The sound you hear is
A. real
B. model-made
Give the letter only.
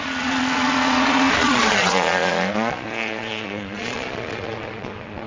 B